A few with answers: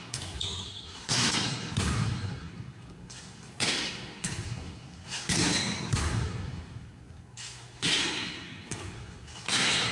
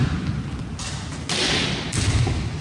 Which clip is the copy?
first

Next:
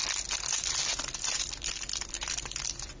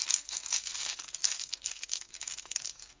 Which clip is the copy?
second